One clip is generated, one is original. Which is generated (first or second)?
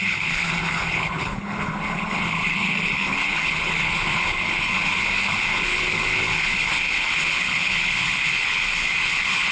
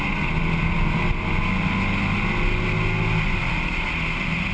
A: first